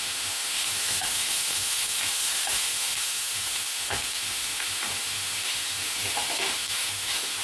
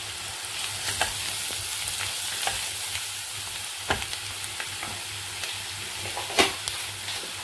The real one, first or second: second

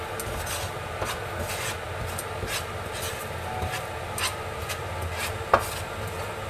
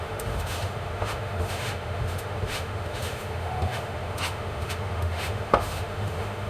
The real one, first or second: first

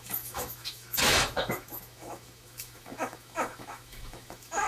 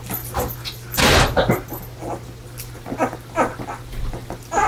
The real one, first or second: second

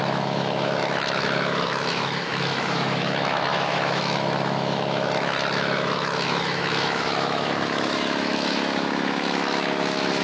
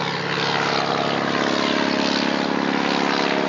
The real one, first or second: second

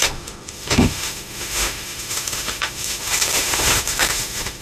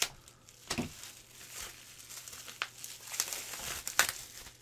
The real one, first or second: second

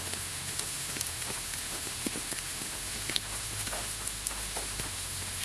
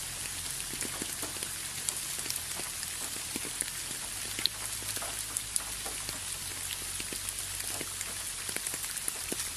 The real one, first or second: second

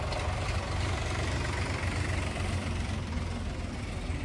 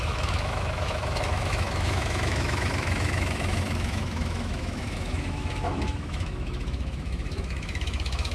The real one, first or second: first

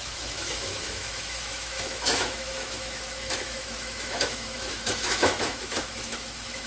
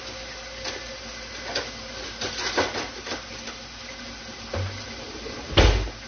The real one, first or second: second